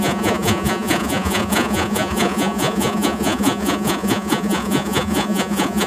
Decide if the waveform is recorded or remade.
remade